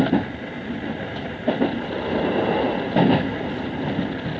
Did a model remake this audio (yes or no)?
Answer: no